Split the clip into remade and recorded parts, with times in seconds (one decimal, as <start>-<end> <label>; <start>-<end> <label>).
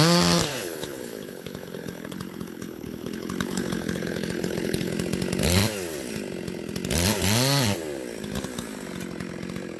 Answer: 0.0-0.5 recorded; 0.5-4.9 remade; 4.9-9.8 recorded